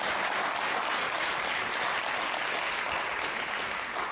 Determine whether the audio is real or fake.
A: real